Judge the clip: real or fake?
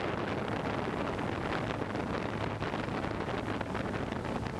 real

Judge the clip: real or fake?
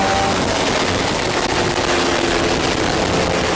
real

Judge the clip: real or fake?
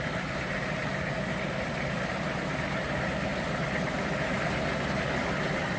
real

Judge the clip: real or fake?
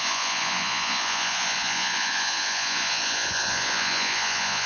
fake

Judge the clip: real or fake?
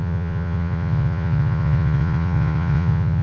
fake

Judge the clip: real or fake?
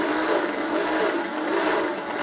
real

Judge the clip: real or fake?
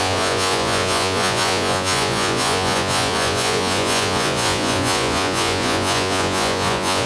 fake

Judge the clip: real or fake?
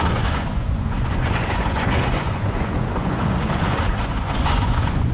fake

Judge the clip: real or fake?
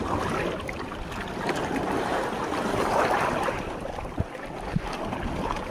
real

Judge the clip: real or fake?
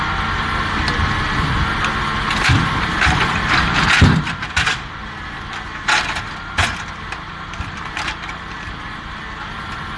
real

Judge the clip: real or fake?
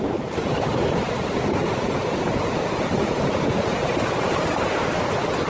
real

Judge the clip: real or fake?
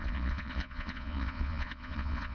fake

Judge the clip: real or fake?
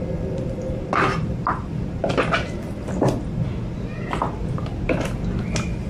real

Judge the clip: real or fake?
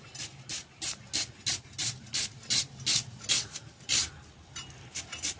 real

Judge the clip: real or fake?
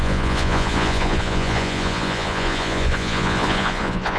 fake